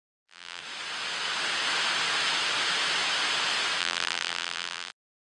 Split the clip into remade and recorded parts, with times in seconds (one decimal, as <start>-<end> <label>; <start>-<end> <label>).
0.0-0.6 remade; 0.6-3.8 recorded; 3.8-5.3 remade